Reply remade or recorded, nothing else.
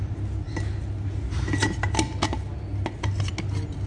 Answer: recorded